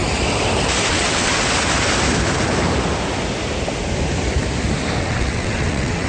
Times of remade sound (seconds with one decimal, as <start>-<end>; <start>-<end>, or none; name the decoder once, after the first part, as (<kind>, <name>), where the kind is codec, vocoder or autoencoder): 0.9-1.3 (vocoder, WaveNeXt); 5.0-6.1